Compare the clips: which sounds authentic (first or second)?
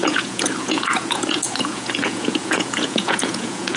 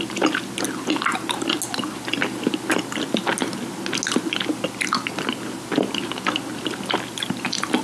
second